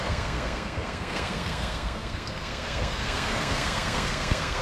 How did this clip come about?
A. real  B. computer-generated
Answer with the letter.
B